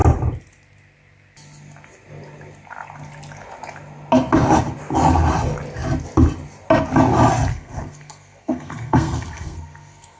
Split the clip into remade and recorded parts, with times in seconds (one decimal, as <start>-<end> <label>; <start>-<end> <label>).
0.0-7.5 recorded; 7.5-10.2 remade